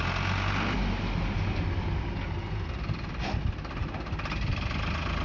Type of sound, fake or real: real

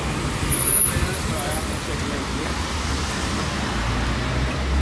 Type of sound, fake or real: real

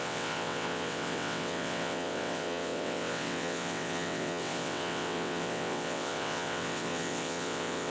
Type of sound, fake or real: fake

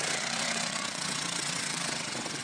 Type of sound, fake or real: fake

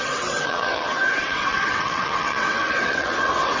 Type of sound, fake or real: fake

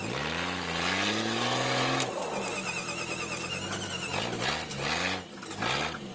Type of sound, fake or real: real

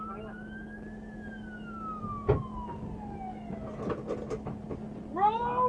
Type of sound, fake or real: real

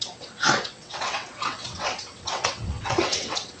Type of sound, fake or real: fake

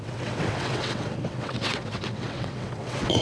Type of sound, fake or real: fake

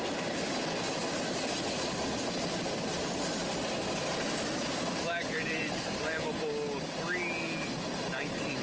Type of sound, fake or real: real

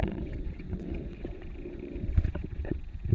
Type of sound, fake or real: fake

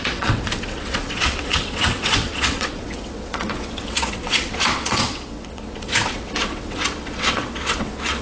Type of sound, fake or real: fake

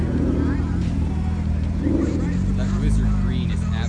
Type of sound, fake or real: real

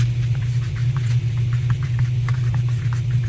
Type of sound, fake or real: real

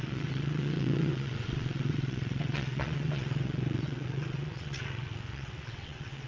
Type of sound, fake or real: fake